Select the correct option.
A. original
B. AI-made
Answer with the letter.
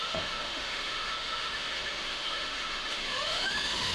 B